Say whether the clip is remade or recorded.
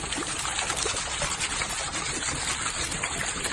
recorded